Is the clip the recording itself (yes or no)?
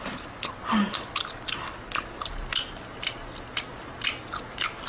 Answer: yes